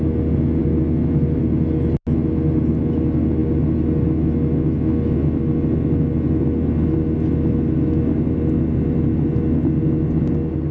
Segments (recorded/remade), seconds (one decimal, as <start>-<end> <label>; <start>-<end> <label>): 0.0-10.7 recorded